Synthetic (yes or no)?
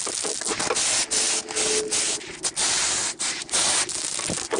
no